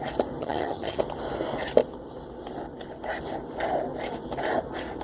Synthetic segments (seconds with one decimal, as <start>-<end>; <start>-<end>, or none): 0.4-1.0